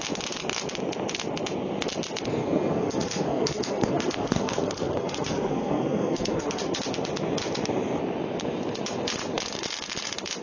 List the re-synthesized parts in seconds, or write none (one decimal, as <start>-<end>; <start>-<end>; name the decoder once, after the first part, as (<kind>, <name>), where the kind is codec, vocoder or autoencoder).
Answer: 2.4-6.8 (codec, SNAC)